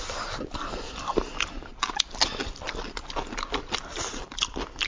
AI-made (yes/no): no